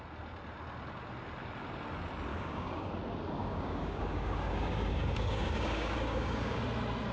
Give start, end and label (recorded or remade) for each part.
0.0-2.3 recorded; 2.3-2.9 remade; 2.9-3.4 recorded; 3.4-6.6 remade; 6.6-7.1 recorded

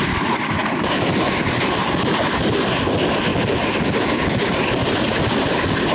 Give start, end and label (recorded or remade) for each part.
0.0-0.6 recorded; 0.6-1.1 remade; 1.1-5.9 recorded

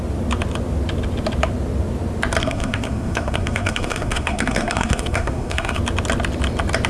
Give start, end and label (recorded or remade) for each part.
0.0-2.4 recorded; 2.4-5.8 remade; 5.8-6.9 recorded

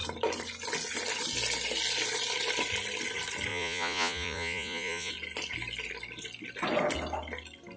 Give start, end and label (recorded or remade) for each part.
0.0-3.5 recorded; 3.5-5.1 remade; 5.1-7.8 recorded

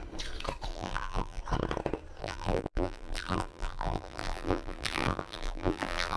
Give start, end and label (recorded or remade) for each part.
0.0-0.7 recorded; 0.7-1.4 remade; 1.4-2.2 recorded; 2.2-6.2 remade

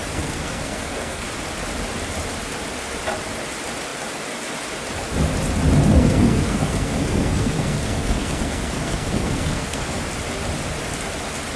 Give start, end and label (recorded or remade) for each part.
0.0-1.3 remade; 1.3-5.9 recorded; 5.9-10.0 remade; 10.0-11.6 recorded